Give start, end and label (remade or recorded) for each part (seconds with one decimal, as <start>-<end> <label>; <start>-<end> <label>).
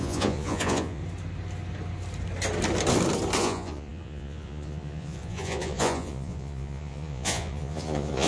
0.0-1.0 remade; 1.0-3.4 recorded; 3.4-8.3 remade